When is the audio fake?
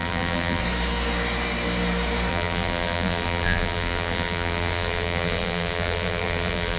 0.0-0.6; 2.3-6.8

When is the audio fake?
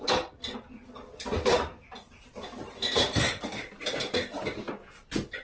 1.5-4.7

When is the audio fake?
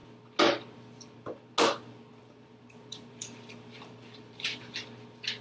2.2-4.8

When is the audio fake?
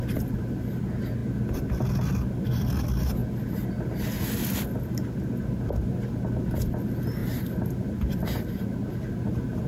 none